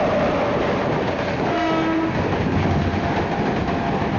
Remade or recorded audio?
recorded